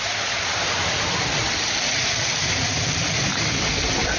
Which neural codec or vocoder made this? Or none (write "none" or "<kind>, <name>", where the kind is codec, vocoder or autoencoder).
none